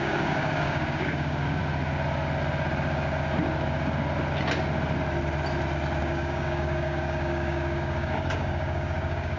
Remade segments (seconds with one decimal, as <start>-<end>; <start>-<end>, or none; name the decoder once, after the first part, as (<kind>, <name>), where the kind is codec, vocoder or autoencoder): 0.0-1.6 (codec, DAC); 6.0-9.4

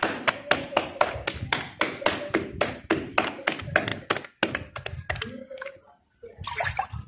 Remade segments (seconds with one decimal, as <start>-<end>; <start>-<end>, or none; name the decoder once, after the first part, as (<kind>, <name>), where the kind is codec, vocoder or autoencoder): none